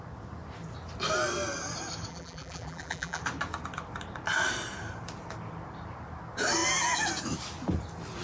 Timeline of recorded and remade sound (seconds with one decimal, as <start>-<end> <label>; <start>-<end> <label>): 0.0-2.1 recorded; 2.1-3.2 remade; 3.2-8.2 recorded